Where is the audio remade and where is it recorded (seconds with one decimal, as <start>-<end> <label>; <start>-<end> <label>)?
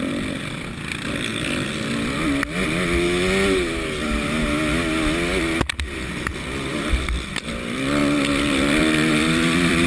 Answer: 0.0-1.3 remade; 1.3-6.3 recorded; 6.3-9.9 remade